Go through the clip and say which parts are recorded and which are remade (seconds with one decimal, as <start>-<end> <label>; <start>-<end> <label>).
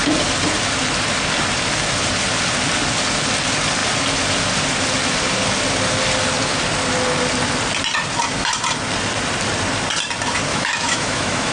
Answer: 0.0-10.5 recorded; 10.5-11.5 remade